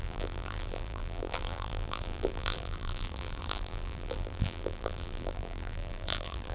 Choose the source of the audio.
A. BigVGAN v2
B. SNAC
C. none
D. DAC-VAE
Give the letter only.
A